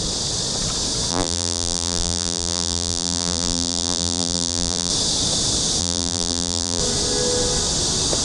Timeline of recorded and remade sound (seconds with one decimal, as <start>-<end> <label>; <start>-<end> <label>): 0.0-1.1 recorded; 1.1-4.9 remade; 4.9-5.8 recorded; 5.8-6.8 remade; 6.8-8.2 recorded